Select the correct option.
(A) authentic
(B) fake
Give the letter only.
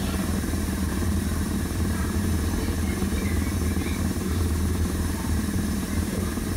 B